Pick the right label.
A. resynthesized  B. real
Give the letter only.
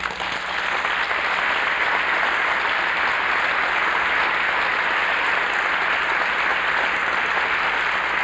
B